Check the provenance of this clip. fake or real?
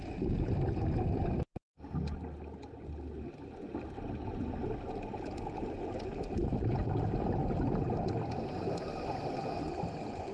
real